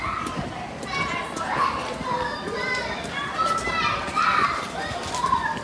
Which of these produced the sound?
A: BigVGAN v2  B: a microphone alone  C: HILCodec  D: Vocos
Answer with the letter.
B